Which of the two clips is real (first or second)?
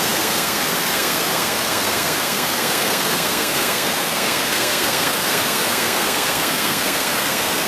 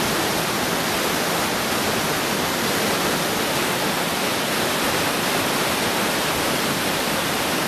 second